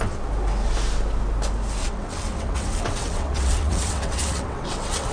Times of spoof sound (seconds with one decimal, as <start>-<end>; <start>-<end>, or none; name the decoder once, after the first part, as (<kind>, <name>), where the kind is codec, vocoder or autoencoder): 1.8-5.1 (vocoder, WaveNeXt)